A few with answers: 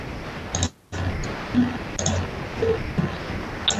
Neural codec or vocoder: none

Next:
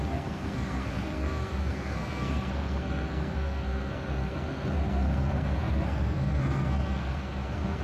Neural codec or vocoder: codec, SNAC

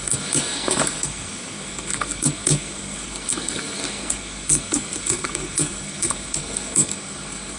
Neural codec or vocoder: codec, SNAC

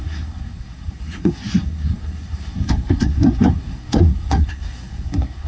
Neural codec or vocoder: codec, SNAC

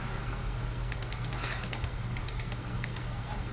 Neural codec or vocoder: codec, SNAC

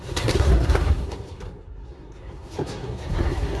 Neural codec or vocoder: codec, SNAC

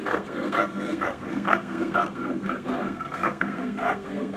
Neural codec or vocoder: codec, SNAC